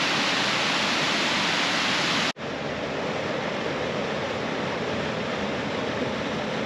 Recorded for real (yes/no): yes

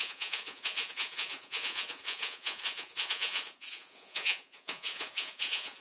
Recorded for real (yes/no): no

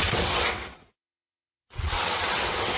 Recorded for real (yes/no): no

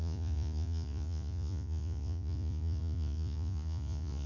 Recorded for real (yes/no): no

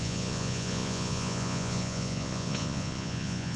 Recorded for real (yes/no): no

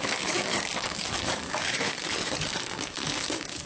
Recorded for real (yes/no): no